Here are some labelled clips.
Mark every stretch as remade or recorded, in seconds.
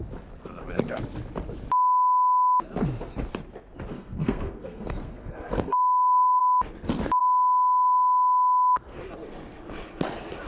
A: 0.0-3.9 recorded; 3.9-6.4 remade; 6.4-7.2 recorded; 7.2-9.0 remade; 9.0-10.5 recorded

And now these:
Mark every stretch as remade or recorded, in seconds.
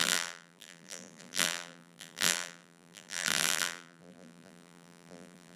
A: 0.0-5.6 remade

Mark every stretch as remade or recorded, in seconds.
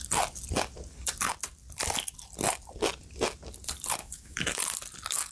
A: 0.0-4.0 recorded; 4.0-4.6 remade; 4.6-5.3 recorded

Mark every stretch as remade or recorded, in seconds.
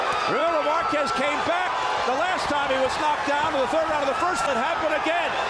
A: 0.0-5.5 recorded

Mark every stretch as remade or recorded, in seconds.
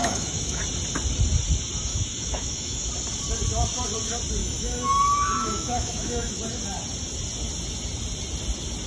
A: 0.0-0.6 remade; 0.6-1.9 recorded; 1.9-2.9 remade; 2.9-4.4 recorded; 4.4-6.3 remade; 6.3-8.9 recorded